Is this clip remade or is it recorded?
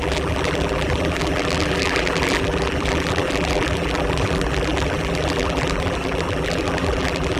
remade